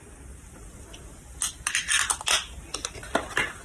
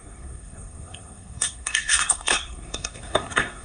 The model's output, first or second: second